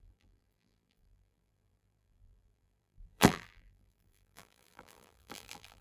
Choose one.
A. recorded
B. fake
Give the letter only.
B